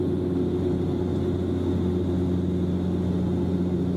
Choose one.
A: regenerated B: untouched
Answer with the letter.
B